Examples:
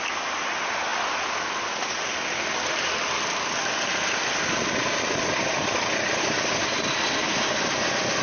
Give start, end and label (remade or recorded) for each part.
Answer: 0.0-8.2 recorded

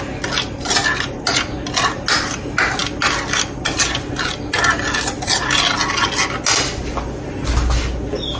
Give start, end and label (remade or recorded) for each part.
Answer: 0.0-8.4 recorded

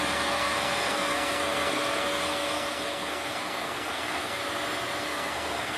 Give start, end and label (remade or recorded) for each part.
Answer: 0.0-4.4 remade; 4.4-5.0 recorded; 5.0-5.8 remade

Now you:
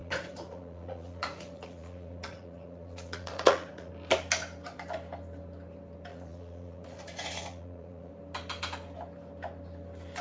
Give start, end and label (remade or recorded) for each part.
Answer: 0.0-3.9 remade; 3.9-6.1 recorded; 6.1-8.1 remade; 8.1-10.2 recorded